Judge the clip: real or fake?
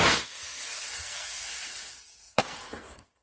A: fake